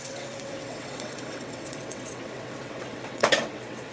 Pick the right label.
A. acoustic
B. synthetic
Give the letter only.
B